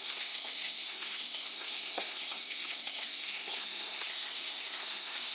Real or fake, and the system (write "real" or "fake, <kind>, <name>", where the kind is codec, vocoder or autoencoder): fake, codec, SNAC